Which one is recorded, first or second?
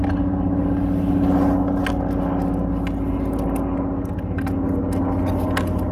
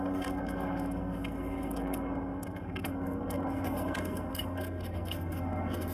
first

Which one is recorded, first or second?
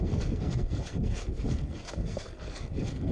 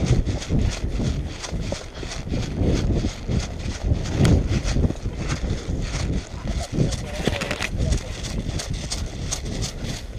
second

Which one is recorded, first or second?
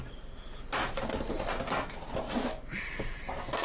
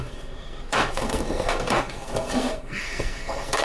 first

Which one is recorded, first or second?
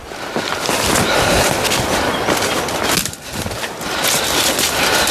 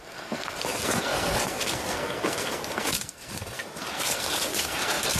first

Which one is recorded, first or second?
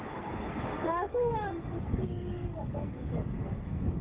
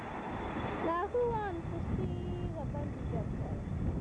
second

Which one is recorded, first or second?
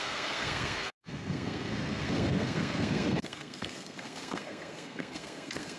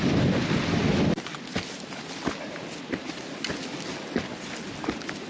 second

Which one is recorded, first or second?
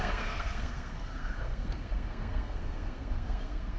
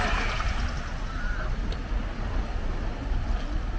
second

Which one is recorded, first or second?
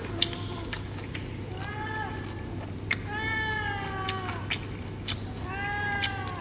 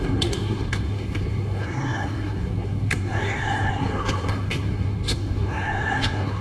first